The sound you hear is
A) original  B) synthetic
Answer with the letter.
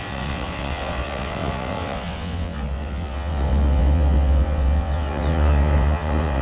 B